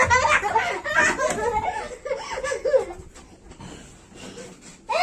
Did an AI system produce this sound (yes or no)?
no